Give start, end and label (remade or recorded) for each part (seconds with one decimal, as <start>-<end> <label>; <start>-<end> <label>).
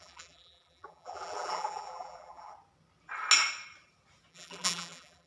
0.0-2.5 remade; 2.5-4.3 recorded; 4.3-5.3 remade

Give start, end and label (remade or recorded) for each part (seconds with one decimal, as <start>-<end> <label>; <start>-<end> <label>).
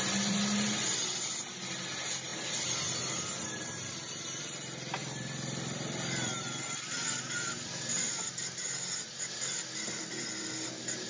0.0-5.0 recorded; 5.0-10.1 remade; 10.1-11.1 recorded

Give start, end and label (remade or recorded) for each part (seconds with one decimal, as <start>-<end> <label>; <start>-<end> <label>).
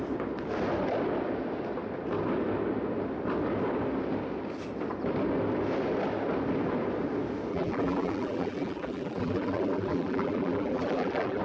0.0-7.5 recorded; 7.5-11.4 remade